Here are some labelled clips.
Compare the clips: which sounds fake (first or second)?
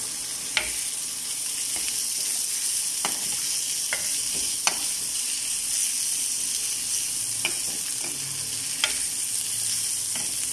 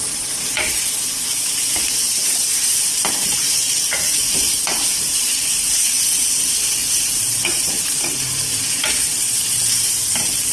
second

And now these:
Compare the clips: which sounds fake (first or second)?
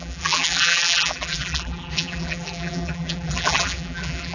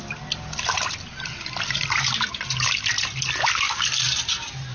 first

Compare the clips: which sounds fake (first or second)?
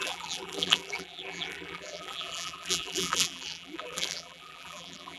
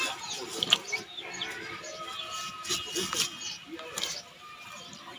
first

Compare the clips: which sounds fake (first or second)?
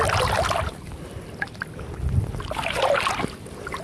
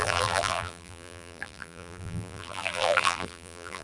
second